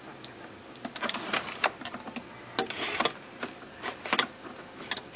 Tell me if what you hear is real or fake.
real